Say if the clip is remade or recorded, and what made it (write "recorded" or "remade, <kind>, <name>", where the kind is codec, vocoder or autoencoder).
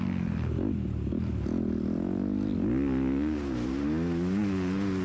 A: recorded